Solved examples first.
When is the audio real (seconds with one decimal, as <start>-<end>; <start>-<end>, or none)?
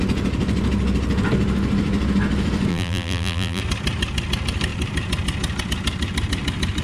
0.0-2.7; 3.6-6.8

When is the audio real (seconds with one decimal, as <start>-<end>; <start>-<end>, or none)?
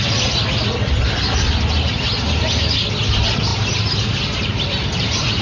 0.0-3.5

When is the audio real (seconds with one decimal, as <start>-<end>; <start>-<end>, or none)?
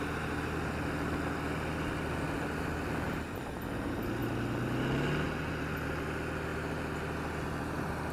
0.0-8.1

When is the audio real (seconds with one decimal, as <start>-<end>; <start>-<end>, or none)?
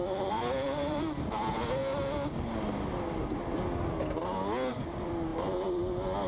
1.8-4.7; 5.3-6.3